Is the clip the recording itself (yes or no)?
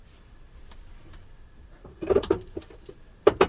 no